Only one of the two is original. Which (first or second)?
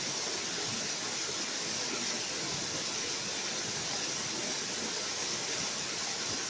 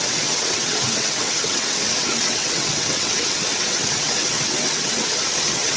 first